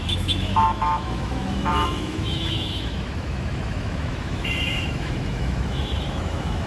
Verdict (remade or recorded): remade